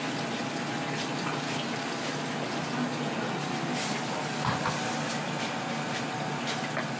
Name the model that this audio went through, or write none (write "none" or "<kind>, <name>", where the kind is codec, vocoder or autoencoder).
none